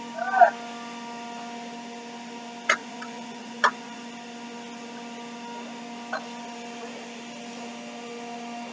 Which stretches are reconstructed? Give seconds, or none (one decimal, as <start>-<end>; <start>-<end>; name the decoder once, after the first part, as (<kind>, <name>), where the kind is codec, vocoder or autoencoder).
2.8-4.0 (vocoder, Vocos)